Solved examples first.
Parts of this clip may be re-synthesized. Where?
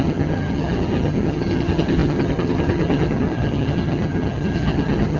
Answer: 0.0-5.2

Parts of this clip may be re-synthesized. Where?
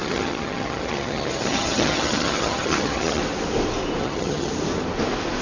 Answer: 0.0-3.2; 4.0-4.5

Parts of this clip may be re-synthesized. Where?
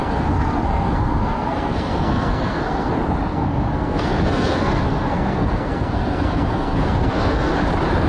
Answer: 0.0-2.9; 3.3-7.5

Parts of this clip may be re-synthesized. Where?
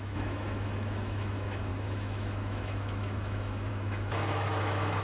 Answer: 0.0-5.0